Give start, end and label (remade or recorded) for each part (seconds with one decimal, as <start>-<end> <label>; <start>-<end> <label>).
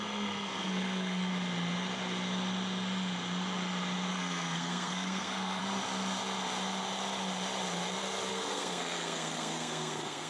0.0-1.3 remade; 1.3-4.1 recorded; 4.1-5.6 remade; 5.6-8.3 recorded; 8.3-10.3 remade